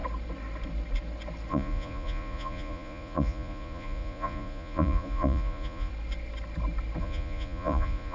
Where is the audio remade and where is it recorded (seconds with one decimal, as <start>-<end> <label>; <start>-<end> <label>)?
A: 0.0-1.5 recorded; 1.5-5.9 remade; 5.9-7.0 recorded; 7.0-8.1 remade